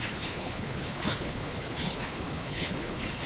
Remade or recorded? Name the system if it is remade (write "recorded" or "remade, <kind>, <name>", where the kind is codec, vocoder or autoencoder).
remade, codec, HILCodec